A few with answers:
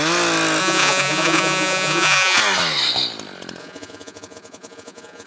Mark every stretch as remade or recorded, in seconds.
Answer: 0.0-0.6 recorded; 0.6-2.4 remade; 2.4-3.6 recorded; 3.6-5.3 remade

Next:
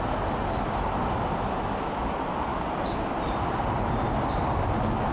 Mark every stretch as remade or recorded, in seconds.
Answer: 0.0-5.1 recorded